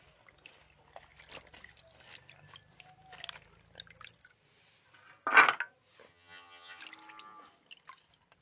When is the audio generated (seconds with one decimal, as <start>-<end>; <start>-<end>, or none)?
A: 6.1-6.8